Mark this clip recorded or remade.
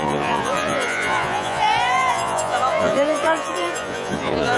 remade